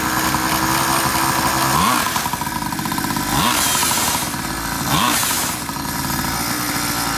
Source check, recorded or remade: recorded